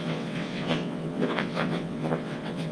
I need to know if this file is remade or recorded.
remade